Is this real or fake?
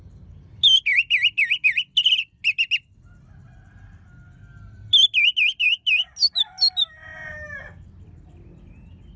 real